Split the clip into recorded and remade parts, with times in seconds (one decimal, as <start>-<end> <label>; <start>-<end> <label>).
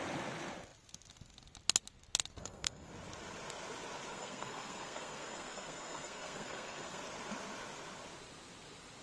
0.0-2.4 recorded; 2.4-2.9 remade; 2.9-4.1 recorded; 4.1-7.0 remade; 7.0-9.0 recorded